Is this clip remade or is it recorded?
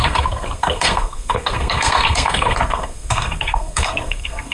remade